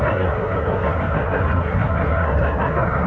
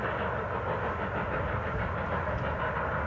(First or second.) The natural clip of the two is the second